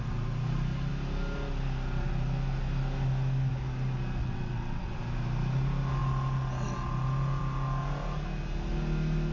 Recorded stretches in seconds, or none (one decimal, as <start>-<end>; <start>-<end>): 0.0-4.2; 5.0-9.3